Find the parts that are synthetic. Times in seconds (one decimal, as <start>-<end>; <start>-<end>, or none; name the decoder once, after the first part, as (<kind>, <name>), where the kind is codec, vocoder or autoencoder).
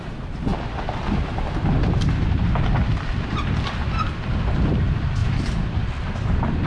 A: none